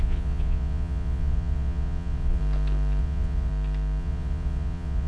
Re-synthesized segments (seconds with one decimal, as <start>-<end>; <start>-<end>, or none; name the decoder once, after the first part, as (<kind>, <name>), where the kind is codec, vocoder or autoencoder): 0.0-2.4 (vocoder, Vocos); 3.0-3.5; 4.0-5.1